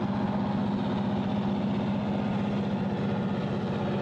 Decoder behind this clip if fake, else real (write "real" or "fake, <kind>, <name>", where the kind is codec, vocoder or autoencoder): real